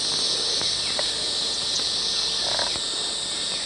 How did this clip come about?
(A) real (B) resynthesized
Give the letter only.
A